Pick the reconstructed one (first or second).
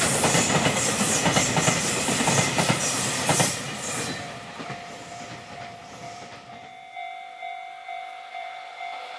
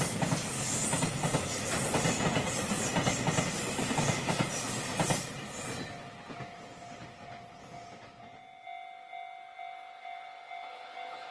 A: first